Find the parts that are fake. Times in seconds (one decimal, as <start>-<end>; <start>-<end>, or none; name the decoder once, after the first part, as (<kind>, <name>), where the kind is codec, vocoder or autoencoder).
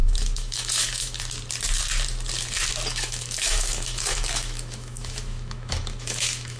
0.0-1.2 (autoencoder, DAC-VAE); 2.9-6.6